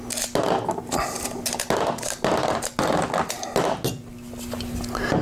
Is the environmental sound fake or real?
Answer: real